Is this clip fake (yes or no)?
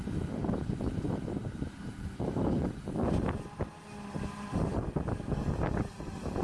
no